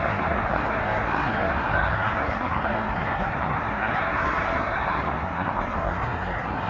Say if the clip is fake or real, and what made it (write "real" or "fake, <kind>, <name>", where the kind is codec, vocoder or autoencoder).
fake, codec, SNAC